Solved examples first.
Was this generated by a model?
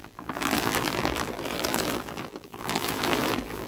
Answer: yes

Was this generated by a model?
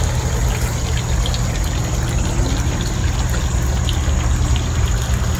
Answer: no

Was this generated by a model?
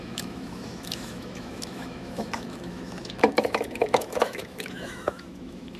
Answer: yes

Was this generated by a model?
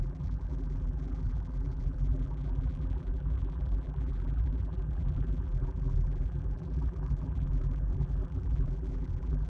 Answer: yes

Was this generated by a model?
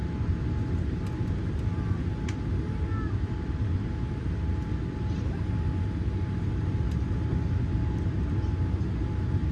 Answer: no